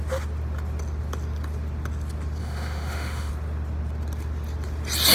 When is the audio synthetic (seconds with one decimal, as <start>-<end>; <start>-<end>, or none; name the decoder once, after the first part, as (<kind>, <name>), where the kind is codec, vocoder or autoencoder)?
2.4-3.3 (autoencoder, DAC-VAE)